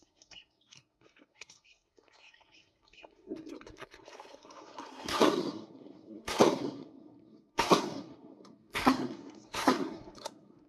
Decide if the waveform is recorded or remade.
remade